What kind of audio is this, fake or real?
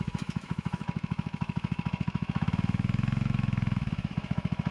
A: fake